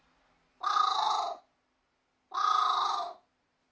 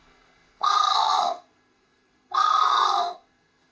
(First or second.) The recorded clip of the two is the first